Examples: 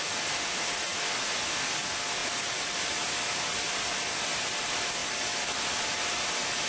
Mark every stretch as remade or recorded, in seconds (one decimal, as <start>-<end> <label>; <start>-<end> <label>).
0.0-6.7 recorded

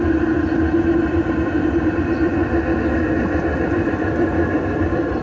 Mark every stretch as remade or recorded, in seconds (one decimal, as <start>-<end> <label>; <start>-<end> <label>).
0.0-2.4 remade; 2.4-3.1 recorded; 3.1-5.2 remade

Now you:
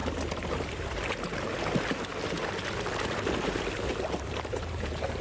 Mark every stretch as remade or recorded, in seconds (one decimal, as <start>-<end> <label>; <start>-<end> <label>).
0.0-0.5 recorded; 0.5-1.5 remade; 1.5-4.3 recorded; 4.3-5.2 remade

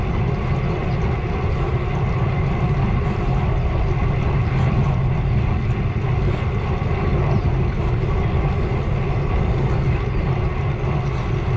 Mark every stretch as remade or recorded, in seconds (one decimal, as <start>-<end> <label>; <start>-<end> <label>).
0.0-11.6 recorded